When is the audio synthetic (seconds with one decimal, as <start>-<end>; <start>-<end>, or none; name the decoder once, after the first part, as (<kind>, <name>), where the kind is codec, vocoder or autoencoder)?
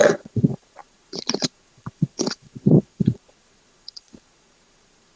0.0-5.2 (vocoder, Vocos)